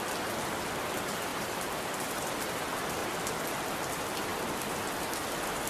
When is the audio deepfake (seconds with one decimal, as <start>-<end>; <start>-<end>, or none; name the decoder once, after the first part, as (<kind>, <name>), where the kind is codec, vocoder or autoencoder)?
1.3-2.6 (vocoder, BigVGAN v2)